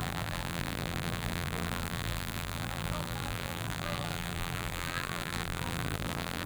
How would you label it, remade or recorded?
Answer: remade